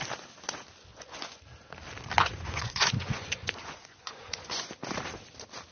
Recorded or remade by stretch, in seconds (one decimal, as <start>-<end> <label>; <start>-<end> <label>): 0.0-0.9 recorded; 0.9-1.4 remade; 1.4-2.2 recorded; 2.2-4.7 remade; 4.7-5.7 recorded